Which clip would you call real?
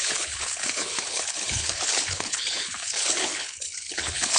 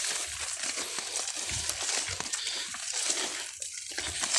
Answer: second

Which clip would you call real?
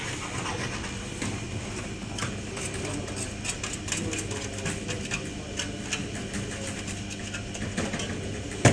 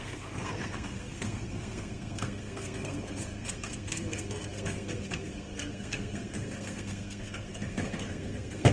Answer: first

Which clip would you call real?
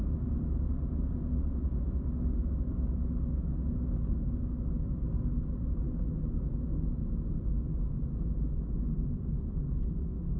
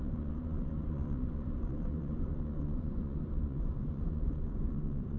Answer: first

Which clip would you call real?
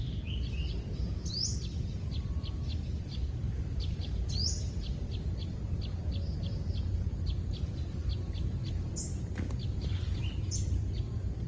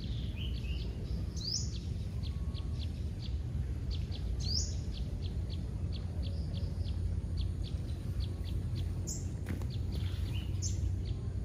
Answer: second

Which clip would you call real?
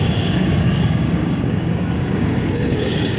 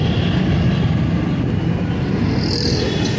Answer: second